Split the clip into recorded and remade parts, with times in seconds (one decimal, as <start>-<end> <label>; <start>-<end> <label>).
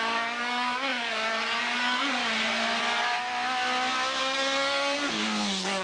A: 0.0-2.2 remade; 2.2-2.8 recorded; 2.8-3.3 remade; 3.3-4.2 recorded; 4.2-5.8 remade